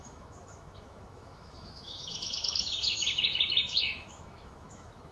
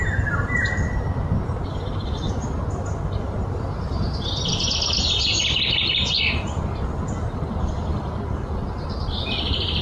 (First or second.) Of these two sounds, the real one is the second